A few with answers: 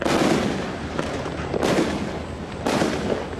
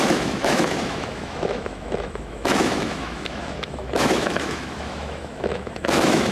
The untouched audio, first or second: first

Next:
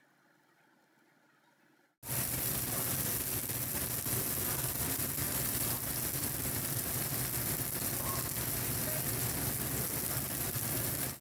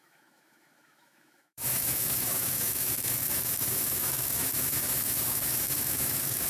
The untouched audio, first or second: first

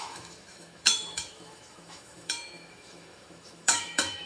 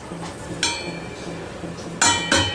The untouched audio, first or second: second